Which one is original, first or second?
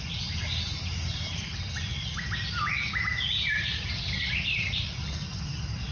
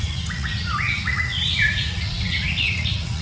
first